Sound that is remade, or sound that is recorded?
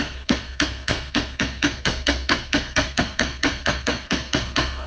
remade